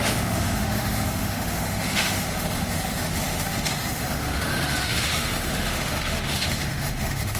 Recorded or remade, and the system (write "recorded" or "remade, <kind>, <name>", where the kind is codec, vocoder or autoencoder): remade, autoencoder, DAC-VAE